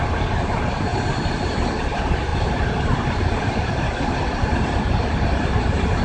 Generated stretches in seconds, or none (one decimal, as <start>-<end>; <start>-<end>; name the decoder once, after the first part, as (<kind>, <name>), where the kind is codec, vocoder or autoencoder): 0.0-6.0 (vocoder, BigVGAN v2)